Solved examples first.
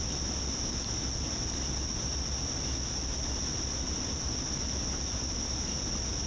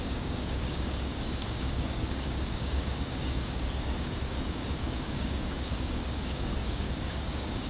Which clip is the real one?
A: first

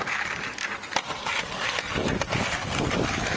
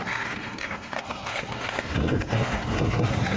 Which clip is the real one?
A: first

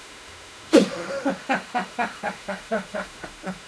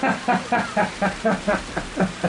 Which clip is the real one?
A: second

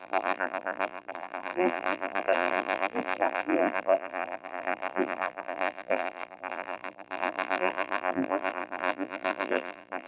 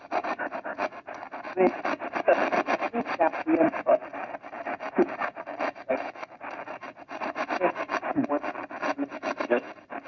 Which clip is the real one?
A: second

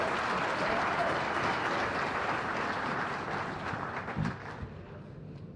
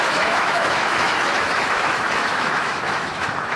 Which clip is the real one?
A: first